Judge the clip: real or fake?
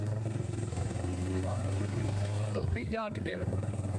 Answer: fake